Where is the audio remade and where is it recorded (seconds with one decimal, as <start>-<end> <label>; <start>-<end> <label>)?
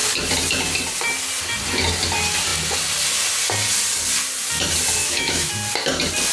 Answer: 0.0-5.0 recorded; 5.0-5.5 remade; 5.5-6.3 recorded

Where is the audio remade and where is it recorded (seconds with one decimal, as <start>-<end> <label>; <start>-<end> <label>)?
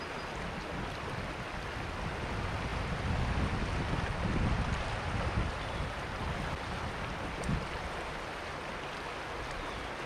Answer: 0.0-10.1 recorded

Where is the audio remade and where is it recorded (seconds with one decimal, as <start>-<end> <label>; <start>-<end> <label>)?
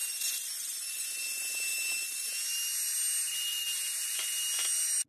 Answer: 0.0-5.1 recorded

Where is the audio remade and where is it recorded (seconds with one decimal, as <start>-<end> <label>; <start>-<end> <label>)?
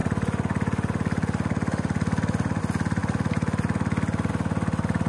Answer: 0.0-5.1 recorded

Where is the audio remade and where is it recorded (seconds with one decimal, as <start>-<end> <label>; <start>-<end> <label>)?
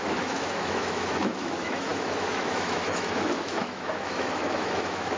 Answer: 0.0-5.2 remade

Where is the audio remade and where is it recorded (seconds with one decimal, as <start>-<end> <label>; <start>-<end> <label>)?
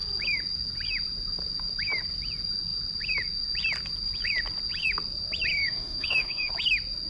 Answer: 0.0-5.6 recorded; 5.6-6.5 remade; 6.5-7.1 recorded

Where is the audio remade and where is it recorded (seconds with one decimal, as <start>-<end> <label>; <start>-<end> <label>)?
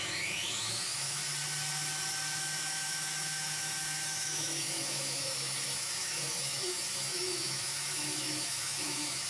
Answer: 0.0-1.2 remade; 1.2-2.4 recorded; 2.4-9.3 remade